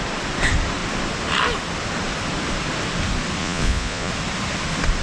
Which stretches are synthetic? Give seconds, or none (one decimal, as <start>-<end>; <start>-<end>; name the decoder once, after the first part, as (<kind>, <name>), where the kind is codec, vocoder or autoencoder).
3.4-4.1 (vocoder, Vocos)